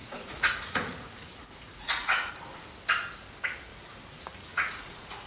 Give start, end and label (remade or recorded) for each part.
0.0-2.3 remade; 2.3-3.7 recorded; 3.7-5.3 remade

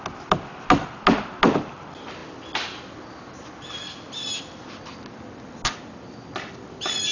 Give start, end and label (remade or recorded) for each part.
0.0-7.1 recorded

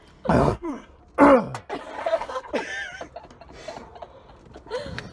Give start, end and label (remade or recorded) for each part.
0.0-0.4 recorded; 0.4-1.0 remade; 1.0-2.0 recorded; 2.0-2.5 remade; 2.5-5.1 recorded

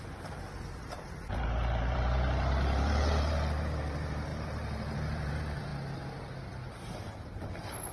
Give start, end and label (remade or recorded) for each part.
0.0-5.7 remade; 5.7-7.0 recorded; 7.0-7.9 remade

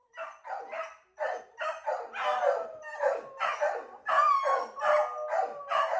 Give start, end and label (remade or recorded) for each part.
0.0-6.0 recorded

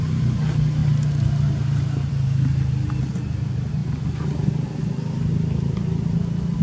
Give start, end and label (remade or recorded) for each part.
0.0-6.6 recorded

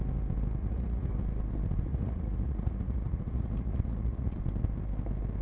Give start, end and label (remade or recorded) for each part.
0.0-0.6 recorded; 0.6-1.1 remade; 1.1-1.9 recorded; 1.9-4.4 remade; 4.4-5.4 recorded

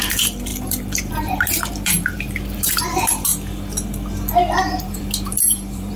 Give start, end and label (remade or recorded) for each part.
0.0-3.3 remade; 3.3-4.8 recorded; 4.8-6.0 remade